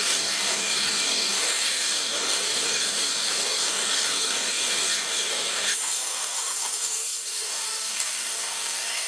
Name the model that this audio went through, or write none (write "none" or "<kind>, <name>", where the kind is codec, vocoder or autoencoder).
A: codec, DAC